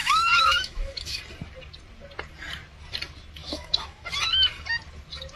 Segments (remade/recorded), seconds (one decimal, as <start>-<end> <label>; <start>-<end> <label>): 0.0-1.2 remade; 1.2-3.4 recorded; 3.4-4.1 remade; 4.1-5.4 recorded